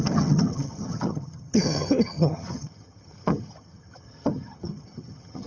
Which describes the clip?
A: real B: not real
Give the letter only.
B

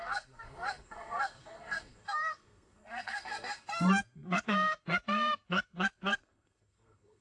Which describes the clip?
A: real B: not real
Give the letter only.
B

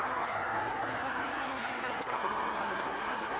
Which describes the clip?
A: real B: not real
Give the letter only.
B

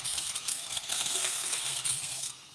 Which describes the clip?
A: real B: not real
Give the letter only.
B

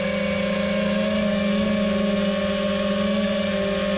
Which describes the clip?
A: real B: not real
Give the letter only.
A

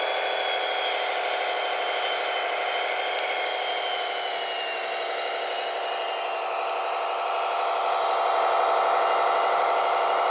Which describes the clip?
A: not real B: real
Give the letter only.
B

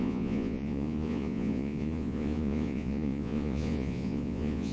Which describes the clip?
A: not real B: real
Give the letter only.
A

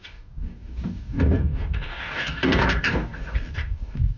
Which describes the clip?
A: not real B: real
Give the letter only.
A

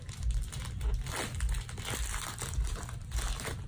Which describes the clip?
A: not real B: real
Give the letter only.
B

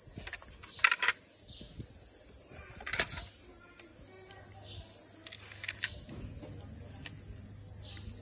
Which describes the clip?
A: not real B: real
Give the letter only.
B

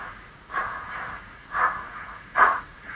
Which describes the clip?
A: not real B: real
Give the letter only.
A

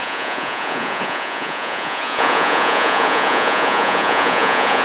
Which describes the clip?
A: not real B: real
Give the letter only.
A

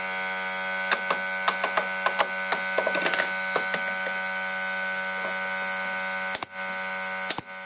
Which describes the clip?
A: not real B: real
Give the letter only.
B